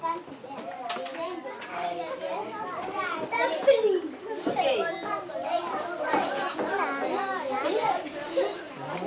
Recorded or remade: recorded